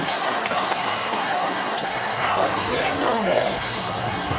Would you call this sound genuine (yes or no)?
no